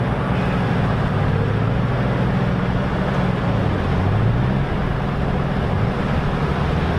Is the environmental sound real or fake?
real